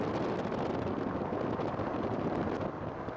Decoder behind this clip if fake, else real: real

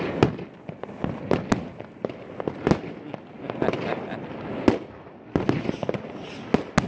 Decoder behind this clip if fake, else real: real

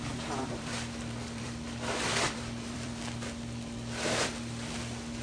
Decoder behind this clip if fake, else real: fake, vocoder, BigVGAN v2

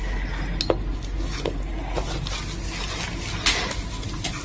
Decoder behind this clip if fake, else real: real